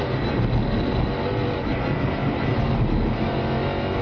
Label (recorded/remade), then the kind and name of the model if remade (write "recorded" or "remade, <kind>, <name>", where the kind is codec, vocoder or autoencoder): recorded